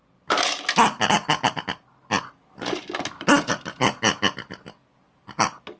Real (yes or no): yes